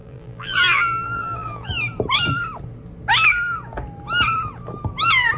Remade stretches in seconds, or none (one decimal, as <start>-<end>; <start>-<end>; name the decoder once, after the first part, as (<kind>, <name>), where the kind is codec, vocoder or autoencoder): 0.0-1.7 (vocoder, BigVGAN v2)